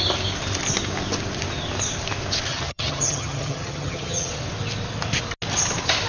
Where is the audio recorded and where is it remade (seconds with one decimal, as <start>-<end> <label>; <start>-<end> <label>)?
0.0-2.5 recorded; 2.5-4.3 remade; 4.3-6.1 recorded